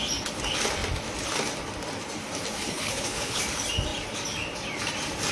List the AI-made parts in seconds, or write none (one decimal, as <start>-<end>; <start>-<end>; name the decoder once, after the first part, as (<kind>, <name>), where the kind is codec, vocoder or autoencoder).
2.6-3.4 (codec, HILCodec)